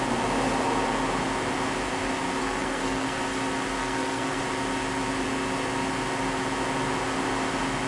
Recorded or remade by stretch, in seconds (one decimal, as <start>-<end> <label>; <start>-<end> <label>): 0.0-2.4 recorded; 2.4-3.2 remade; 3.2-3.8 recorded; 3.8-4.4 remade; 4.4-7.9 recorded